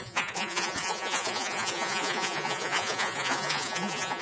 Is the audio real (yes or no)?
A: no